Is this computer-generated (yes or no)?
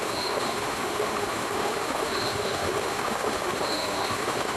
yes